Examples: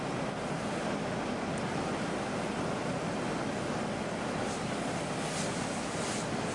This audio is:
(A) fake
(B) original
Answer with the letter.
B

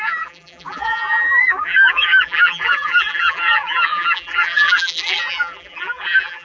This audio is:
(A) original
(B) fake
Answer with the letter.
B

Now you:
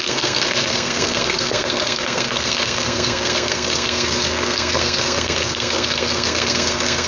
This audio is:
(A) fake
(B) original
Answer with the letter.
A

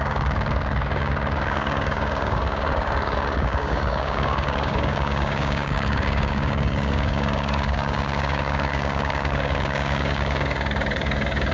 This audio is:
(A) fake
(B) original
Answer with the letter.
A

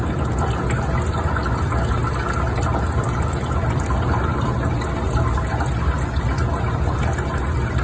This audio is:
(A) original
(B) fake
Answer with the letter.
A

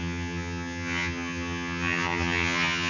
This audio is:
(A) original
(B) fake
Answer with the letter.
B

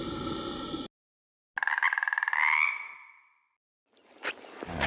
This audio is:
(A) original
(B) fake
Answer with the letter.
A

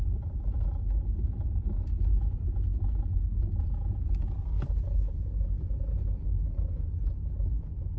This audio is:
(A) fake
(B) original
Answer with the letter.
B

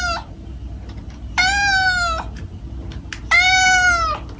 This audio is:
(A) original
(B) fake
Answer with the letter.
A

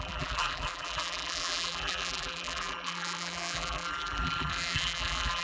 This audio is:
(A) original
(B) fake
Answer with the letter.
B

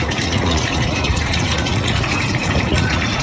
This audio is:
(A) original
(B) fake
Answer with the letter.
B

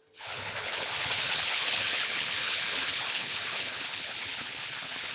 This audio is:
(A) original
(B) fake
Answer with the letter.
B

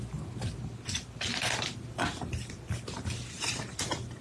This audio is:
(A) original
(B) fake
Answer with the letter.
A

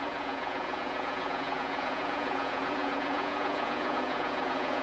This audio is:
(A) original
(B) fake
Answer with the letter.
B